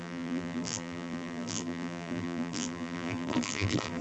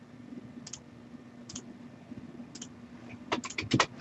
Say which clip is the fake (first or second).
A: first